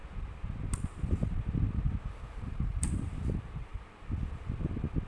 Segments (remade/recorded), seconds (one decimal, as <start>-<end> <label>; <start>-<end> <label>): 0.0-2.1 recorded; 2.1-3.7 remade; 3.7-5.1 recorded